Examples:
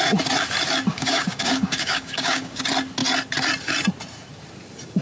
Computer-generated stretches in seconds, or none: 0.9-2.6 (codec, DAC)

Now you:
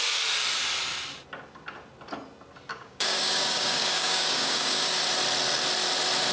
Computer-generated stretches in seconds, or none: 2.7-5.0 (codec, DAC)

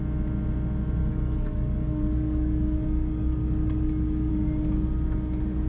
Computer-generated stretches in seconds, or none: 1.0-4.3 (codec, DAC)

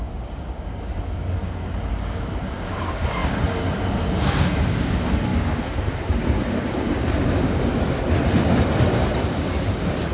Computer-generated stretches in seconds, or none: 0.0-7.7 (codec, DAC); 9.3-10.1

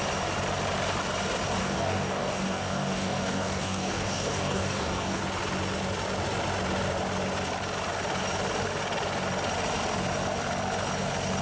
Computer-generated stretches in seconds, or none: 1.6-5.2 (codec, DAC)

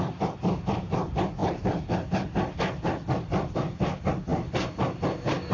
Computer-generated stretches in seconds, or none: none

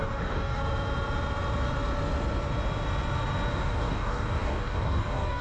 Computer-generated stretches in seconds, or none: 0.0-0.6 (codec, DAC); 3.5-5.4

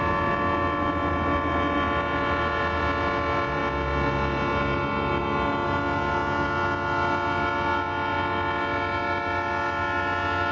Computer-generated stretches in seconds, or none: none